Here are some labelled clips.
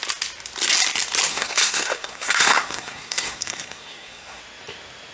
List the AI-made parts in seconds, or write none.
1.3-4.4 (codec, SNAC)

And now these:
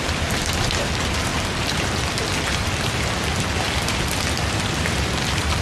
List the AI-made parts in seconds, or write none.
none

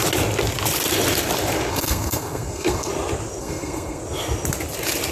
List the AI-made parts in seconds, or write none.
1.7-2.9 (codec, SNAC); 3.4-4.0

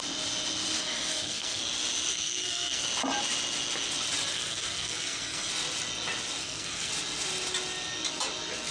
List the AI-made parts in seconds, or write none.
1.1-1.6 (codec, SNAC); 2.1-2.8; 4.3-5.5; 6.4-6.9

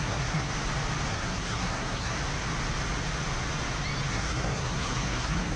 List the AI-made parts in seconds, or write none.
0.0-0.5 (codec, SNAC); 1.1-2.2; 4.1-5.6

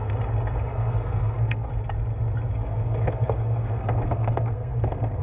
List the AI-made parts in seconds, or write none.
0.6-1.7 (codec, SNAC); 2.5-5.2